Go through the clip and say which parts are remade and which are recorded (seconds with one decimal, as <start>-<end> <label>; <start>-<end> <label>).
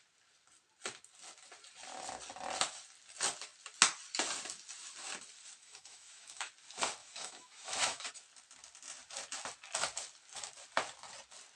0.0-5.6 recorded; 5.6-6.5 remade; 6.5-7.0 recorded; 7.0-8.1 remade; 8.1-11.6 recorded